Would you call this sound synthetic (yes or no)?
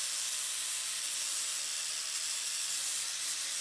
no